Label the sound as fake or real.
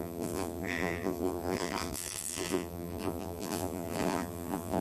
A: fake